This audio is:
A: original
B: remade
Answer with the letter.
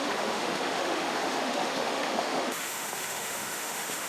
B